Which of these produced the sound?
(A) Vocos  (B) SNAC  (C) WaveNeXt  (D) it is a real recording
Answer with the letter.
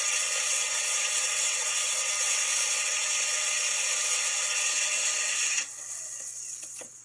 C